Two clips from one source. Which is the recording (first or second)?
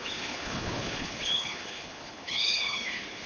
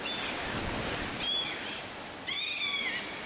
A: second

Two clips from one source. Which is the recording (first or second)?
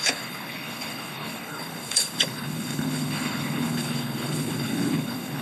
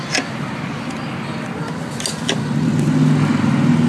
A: second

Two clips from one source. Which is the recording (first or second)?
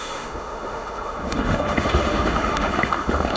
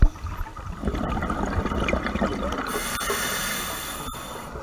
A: second